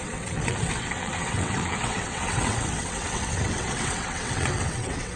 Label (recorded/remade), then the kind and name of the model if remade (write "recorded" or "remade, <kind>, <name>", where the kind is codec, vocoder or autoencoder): remade, vocoder, WaveNeXt